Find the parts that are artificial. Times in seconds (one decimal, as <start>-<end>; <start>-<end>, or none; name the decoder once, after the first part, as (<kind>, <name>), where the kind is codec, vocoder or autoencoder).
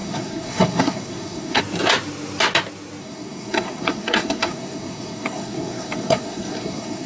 0.0-1.6 (codec, SNAC); 3.0-7.1